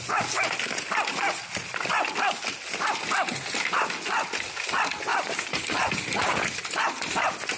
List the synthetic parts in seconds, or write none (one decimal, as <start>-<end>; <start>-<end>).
none